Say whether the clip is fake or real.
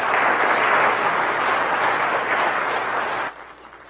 real